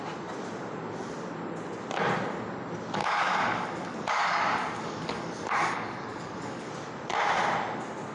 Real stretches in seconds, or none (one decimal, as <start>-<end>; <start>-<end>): 0.0-3.0; 6.7-8.1